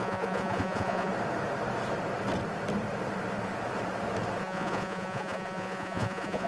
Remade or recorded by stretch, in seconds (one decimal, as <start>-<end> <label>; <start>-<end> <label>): 0.0-1.1 remade; 1.1-4.4 recorded; 4.4-6.5 remade